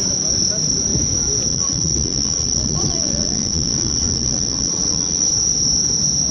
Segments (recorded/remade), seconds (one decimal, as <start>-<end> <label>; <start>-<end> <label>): 0.0-1.5 recorded; 1.5-5.3 remade; 5.3-6.3 recorded